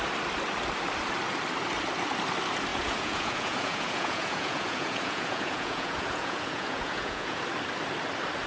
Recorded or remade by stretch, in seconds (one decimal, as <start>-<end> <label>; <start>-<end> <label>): 0.0-2.7 recorded; 2.7-7.4 remade; 7.4-8.5 recorded